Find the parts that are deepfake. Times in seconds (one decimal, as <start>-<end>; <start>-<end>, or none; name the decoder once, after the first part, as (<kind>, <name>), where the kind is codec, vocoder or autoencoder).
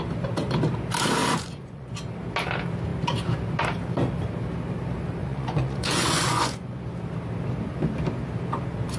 1.2-1.9 (vocoder, Vocos); 5.2-6.8